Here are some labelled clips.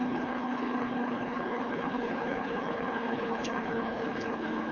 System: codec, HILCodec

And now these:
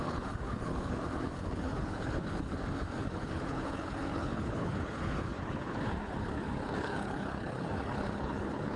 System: codec, HILCodec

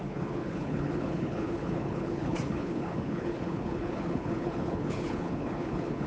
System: codec, HILCodec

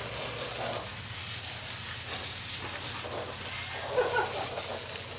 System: none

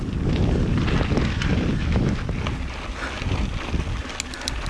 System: none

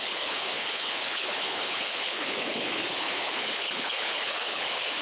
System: codec, HILCodec